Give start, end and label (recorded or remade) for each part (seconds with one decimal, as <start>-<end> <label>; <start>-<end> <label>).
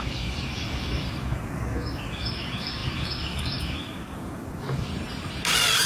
0.0-4.9 remade; 4.9-5.9 recorded